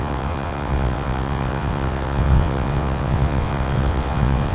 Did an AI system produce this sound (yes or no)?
yes